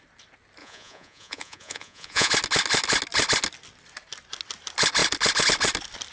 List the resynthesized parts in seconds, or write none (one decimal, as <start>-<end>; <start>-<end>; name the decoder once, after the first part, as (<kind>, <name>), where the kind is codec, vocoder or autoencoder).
0.6-2.3 (vocoder, Vocos)